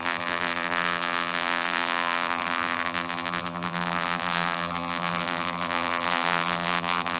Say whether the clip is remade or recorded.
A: remade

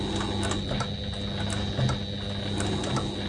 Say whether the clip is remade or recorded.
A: recorded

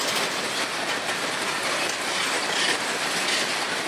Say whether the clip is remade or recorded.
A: recorded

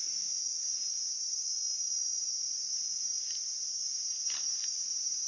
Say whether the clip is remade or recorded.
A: recorded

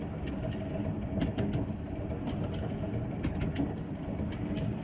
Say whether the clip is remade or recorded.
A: recorded